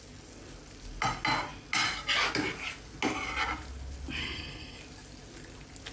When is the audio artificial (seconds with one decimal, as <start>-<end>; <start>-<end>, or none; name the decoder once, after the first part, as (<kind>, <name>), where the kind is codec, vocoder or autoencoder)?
4.2-4.8 (codec, SNAC)